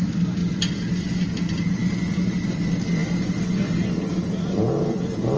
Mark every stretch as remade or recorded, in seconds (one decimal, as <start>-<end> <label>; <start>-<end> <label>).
0.0-5.4 recorded